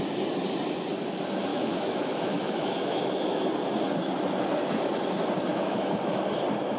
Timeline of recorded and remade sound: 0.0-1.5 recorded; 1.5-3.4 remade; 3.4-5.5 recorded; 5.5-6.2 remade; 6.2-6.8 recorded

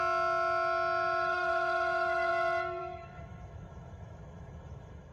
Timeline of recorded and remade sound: 0.0-1.3 recorded; 1.3-2.3 remade; 2.3-2.8 recorded; 2.8-5.1 remade

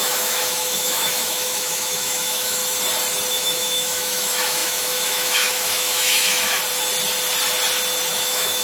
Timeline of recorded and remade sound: 0.0-2.6 remade; 2.6-3.3 recorded; 3.3-6.6 remade; 6.6-8.1 recorded; 8.1-8.6 remade

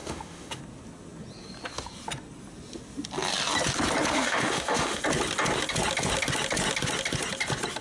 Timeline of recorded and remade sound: 0.0-0.6 remade; 0.6-4.1 recorded; 4.1-5.0 remade; 5.0-7.8 recorded

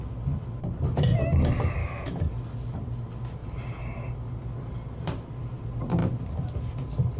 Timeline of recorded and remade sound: 0.0-1.8 recorded; 1.8-2.3 remade; 2.3-7.2 recorded

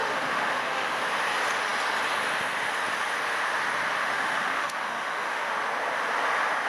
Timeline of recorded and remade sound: 0.0-1.0 remade; 1.0-4.0 recorded; 4.0-5.5 remade; 5.5-6.7 recorded

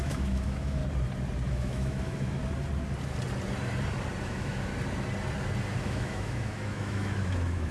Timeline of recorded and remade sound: 0.0-0.8 remade; 0.8-1.5 recorded; 1.5-2.4 remade; 2.4-4.2 recorded; 4.2-4.7 remade; 4.7-5.8 recorded; 5.8-7.7 remade

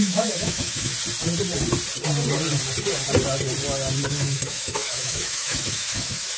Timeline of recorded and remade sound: 0.0-0.9 remade; 0.9-4.1 recorded; 4.1-6.4 remade